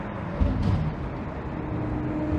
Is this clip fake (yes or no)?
no